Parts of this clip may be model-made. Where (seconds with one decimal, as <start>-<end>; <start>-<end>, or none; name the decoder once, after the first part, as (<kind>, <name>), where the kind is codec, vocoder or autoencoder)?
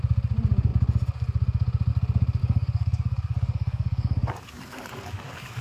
2.4-5.6 (codec, DAC)